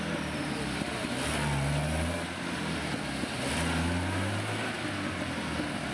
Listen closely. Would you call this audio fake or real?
real